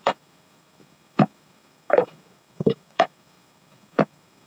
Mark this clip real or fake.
fake